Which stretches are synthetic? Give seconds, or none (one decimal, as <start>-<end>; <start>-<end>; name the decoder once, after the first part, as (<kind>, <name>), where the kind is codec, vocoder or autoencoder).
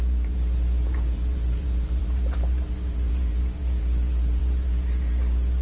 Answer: 0.0-5.6 (vocoder, BigVGAN v2)